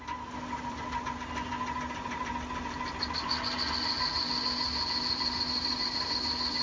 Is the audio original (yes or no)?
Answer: yes